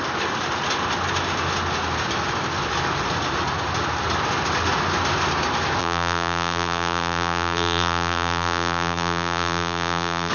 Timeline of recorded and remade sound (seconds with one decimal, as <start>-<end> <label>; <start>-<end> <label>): 0.0-5.8 recorded; 5.8-10.3 remade